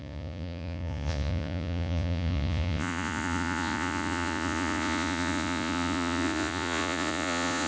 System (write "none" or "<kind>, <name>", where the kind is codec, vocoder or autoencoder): vocoder, Vocos